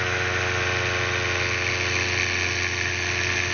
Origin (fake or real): real